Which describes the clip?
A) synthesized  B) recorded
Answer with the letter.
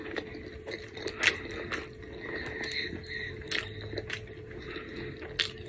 B